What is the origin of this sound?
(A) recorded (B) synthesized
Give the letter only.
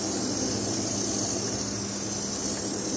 A